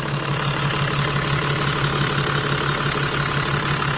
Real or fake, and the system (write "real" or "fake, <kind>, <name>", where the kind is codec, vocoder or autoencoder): real